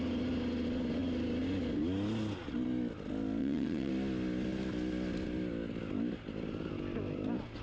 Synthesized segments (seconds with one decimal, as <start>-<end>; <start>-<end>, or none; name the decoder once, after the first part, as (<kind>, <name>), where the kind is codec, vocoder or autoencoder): 3.4-3.9 (vocoder, WaveNeXt)